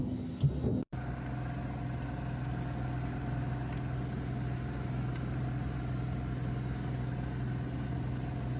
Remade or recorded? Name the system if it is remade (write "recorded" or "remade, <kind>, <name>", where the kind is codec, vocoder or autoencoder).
recorded